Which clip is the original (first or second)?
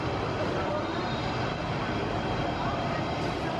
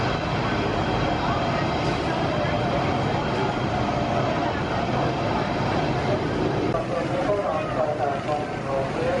second